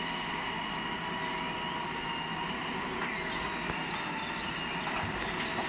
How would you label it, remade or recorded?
recorded